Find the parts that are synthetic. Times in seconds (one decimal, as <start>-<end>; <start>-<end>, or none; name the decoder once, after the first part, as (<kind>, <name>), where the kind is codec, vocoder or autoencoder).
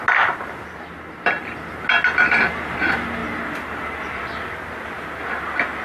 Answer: none